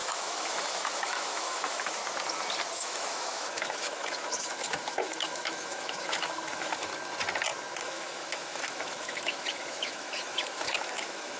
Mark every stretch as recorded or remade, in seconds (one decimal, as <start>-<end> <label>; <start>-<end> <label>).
0.0-2.0 remade; 2.0-2.7 recorded; 2.7-6.9 remade; 6.9-7.8 recorded; 7.8-11.4 remade